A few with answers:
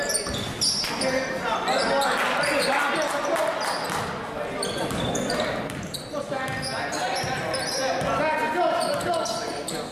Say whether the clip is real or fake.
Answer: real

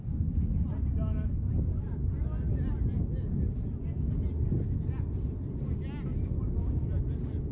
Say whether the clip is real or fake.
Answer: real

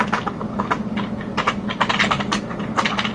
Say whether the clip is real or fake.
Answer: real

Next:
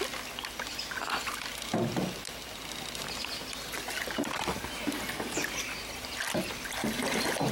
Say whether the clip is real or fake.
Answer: real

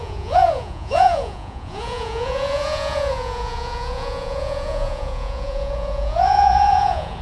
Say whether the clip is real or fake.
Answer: fake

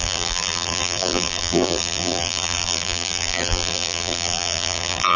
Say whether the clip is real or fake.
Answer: fake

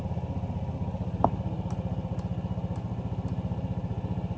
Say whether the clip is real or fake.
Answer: real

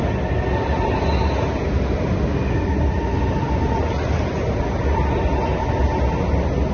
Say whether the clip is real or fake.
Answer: real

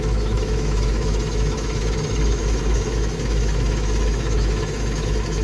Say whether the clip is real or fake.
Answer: fake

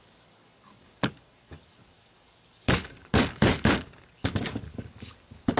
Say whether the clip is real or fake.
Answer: fake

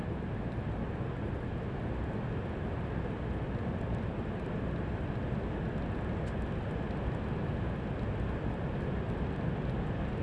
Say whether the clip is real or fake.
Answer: real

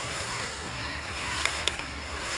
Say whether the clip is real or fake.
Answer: fake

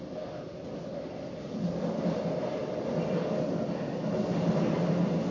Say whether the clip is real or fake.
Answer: real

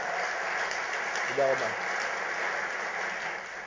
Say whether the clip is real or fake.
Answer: real